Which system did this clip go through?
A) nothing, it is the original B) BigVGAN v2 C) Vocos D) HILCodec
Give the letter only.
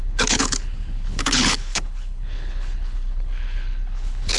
D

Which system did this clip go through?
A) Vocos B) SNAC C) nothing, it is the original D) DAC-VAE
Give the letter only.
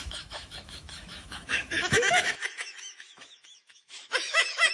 D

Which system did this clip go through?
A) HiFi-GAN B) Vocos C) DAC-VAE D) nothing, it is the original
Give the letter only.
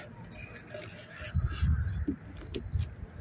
D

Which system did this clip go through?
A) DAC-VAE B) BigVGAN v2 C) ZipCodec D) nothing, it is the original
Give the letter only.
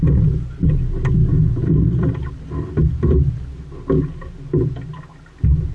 D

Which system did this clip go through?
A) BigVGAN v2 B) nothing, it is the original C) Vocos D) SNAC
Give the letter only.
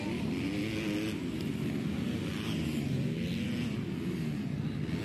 B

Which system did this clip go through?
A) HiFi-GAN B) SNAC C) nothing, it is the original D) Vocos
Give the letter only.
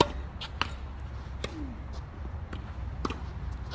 C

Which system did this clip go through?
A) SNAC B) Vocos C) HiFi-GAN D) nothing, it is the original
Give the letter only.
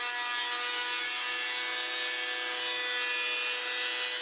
D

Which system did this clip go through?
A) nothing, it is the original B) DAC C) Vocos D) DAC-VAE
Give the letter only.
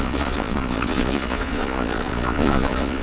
C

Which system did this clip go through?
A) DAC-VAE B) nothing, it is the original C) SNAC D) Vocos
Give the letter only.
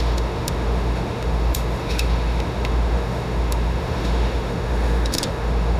A